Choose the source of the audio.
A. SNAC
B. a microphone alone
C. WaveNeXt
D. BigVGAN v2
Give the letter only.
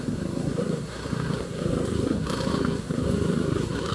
A